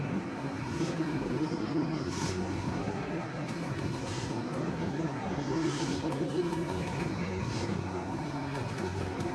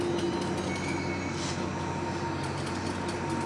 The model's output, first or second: first